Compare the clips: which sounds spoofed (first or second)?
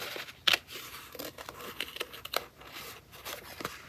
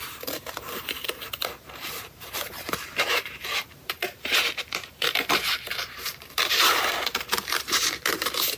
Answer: second